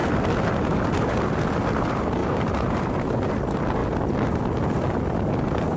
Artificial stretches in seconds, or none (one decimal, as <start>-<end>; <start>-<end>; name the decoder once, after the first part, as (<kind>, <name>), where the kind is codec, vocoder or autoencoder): 2.2-3.3 (vocoder, BigVGAN v2)